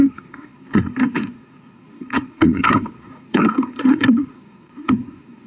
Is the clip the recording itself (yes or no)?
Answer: no